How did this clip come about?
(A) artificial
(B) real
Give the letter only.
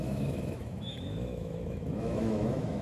A